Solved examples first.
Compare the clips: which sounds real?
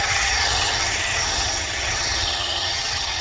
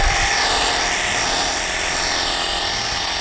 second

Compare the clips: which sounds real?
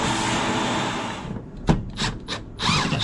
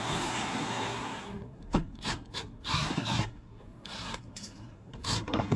first